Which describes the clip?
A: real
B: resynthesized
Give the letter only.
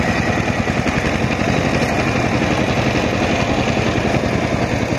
A